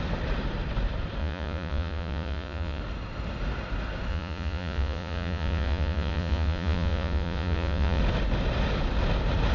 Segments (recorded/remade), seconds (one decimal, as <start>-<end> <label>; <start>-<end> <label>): 0.0-1.2 recorded; 1.2-2.8 remade; 2.8-4.1 recorded; 4.1-8.0 remade; 8.0-9.5 recorded